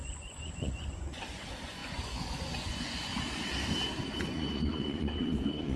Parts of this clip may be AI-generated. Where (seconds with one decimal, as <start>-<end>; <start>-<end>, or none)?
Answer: 0.0-3.1; 4.2-5.8